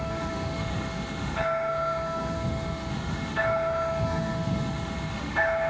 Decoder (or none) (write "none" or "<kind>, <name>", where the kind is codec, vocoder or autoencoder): autoencoder, DAC-VAE